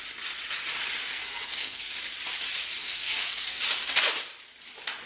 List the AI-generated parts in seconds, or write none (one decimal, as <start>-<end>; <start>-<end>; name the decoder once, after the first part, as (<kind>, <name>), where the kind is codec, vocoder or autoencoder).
1.1-1.9 (codec, SNAC); 2.8-3.6